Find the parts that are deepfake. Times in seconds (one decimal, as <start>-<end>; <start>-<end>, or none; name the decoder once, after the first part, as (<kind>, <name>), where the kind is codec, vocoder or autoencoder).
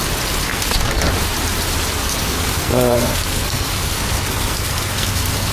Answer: 0.5-1.0 (codec, SNAC); 2.0-5.5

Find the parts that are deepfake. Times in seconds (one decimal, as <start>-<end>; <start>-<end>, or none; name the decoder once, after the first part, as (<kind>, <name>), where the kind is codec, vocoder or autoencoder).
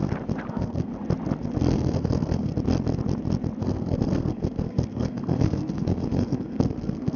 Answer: 0.5-0.9 (codec, SNAC); 1.7-2.5; 3.6-7.2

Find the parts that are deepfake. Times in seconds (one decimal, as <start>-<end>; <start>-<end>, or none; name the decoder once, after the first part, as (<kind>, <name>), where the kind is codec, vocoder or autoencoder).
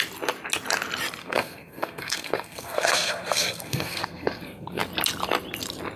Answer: 1.2-4.8 (codec, SNAC)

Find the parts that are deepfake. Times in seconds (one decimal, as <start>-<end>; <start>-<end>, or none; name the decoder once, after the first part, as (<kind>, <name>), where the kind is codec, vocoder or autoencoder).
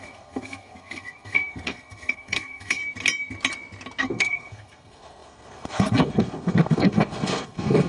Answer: 0.0-2.8 (codec, SNAC); 4.0-7.9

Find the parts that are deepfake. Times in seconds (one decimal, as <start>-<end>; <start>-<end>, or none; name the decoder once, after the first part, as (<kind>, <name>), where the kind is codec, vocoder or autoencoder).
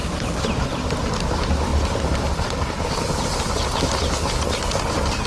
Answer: none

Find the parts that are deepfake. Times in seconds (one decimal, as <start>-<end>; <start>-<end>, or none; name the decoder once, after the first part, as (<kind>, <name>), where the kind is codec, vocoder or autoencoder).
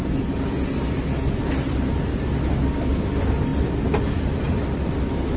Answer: none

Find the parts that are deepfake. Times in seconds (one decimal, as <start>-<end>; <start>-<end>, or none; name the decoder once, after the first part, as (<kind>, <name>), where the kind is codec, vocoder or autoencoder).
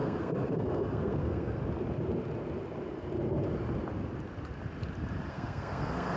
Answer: 0.0-1.6 (codec, SNAC); 5.3-6.2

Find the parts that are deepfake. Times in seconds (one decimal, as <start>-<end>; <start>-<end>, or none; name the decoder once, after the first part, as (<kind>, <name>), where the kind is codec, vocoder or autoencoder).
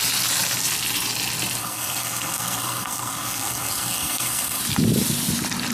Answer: 1.6-4.6 (codec, SNAC)